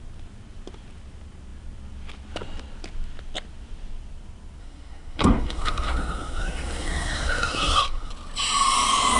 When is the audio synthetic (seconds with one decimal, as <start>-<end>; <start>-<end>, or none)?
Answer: 4.6-8.1